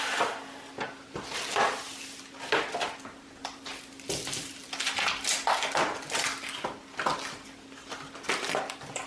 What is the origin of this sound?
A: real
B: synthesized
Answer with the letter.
A